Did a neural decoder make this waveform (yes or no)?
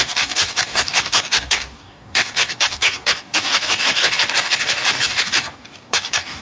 yes